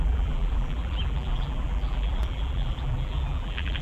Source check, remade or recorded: remade